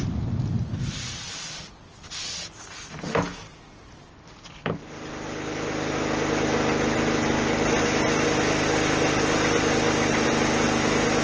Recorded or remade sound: recorded